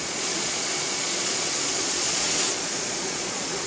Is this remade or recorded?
remade